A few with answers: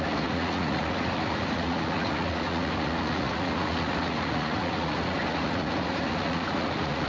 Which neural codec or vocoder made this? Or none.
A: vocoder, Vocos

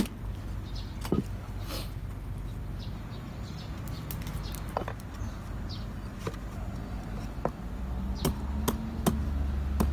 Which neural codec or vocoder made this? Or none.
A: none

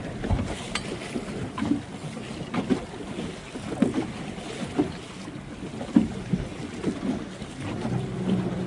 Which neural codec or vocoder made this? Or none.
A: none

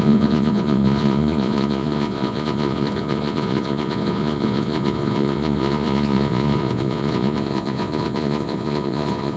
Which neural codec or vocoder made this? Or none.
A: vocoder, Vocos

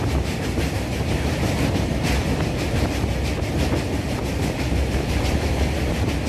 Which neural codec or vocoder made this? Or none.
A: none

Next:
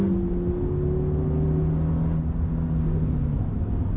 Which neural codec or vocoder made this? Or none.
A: none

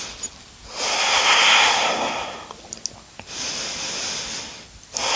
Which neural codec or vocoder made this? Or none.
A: none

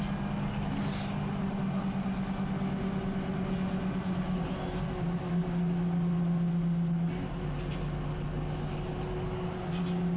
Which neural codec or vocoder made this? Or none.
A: none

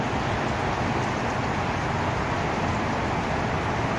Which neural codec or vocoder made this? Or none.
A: none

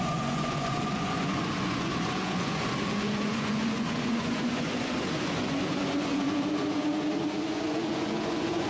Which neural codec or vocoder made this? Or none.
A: vocoder, Vocos